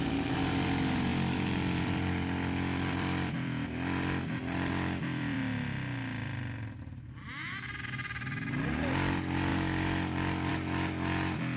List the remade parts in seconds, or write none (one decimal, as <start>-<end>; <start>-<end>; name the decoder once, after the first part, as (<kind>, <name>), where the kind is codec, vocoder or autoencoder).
1.1-5.4 (vocoder, BigVGAN v2)